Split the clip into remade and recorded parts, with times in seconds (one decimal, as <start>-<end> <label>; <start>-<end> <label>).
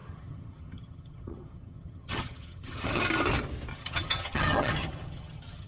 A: 0.0-3.0 remade; 3.0-3.7 recorded; 3.7-5.7 remade